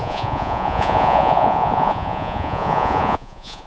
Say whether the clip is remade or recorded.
remade